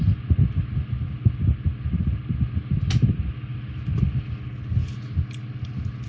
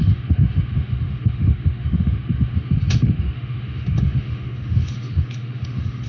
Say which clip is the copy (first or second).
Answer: second